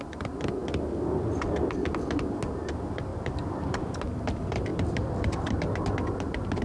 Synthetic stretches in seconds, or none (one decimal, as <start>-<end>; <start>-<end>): 3.1-3.9; 4.7-5.6